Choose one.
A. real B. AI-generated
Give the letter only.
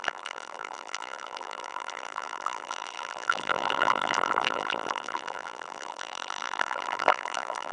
B